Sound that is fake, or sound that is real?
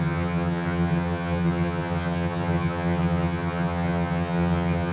fake